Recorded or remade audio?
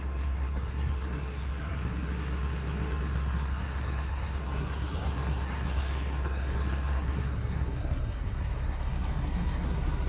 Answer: remade